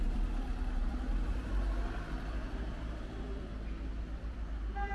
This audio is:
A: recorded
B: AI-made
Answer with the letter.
A